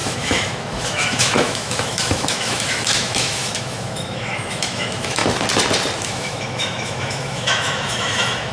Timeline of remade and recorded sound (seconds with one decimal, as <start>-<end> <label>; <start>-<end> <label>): 0.0-5.2 remade; 5.2-6.0 recorded; 6.0-8.5 remade